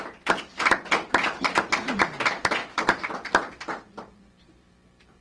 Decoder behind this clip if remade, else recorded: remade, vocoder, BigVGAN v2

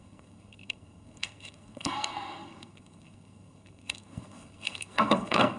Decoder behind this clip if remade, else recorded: remade, codec, SNAC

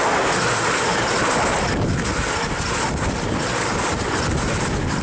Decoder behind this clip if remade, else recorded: recorded